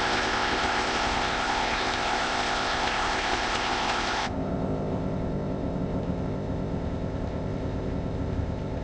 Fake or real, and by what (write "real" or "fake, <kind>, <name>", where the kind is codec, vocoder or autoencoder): fake, codec, ZipCodec